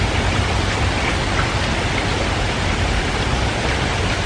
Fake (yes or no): no